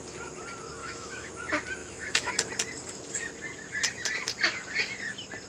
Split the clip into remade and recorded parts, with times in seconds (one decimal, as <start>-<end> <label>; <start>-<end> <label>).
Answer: 0.0-0.8 recorded; 0.8-1.3 remade; 1.3-1.8 recorded; 1.8-2.3 remade; 2.3-5.5 recorded